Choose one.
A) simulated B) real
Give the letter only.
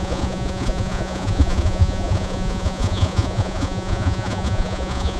A